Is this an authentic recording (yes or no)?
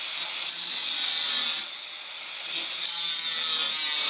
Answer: yes